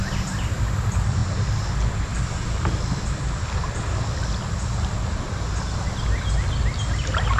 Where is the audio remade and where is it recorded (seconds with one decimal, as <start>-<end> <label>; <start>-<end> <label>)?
0.0-7.4 recorded